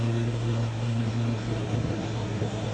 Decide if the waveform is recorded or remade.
remade